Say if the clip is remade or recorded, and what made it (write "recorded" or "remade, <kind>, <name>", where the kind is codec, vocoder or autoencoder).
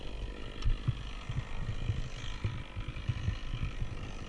recorded